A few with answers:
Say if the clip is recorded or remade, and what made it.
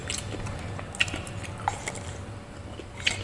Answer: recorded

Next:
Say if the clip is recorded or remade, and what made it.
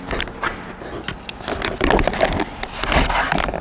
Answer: recorded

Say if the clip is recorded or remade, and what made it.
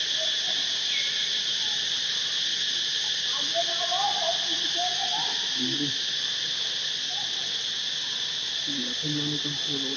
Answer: recorded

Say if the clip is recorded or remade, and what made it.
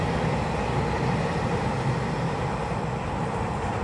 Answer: recorded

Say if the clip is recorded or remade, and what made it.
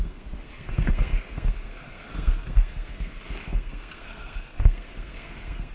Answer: remade, codec, SNAC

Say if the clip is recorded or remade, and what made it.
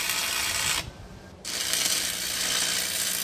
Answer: remade, vocoder, BigVGAN v2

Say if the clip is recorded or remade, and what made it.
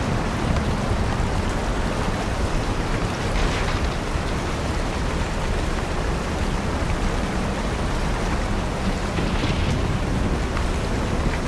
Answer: recorded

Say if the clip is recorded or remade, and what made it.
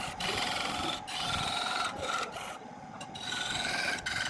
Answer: recorded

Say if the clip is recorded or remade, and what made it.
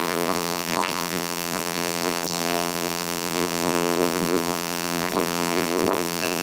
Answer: remade, vocoder, BigVGAN v2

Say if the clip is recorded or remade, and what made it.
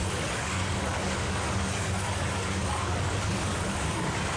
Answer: remade, codec, DAC